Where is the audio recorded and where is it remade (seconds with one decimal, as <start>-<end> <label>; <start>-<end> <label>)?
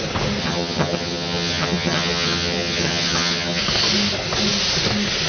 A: 0.0-0.4 recorded; 0.4-3.6 remade; 3.6-5.3 recorded